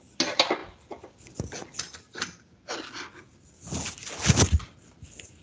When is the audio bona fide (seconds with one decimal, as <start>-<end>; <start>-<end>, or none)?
0.0-5.4